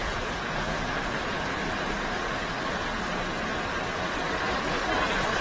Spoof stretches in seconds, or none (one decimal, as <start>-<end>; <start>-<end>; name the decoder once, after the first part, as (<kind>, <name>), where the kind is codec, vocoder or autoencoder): 0.0-1.6 (vocoder, Vocos)